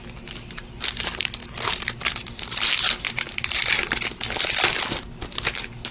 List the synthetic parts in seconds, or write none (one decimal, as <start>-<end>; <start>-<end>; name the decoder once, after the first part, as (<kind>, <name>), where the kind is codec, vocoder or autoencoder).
none